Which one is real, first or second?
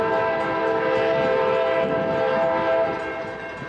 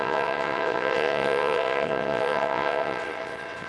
first